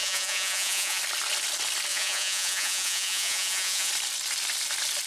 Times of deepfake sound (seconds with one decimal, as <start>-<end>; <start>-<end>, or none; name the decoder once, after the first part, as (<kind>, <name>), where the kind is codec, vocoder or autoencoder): 0.0-1.0 (vocoder, Vocos); 1.9-3.9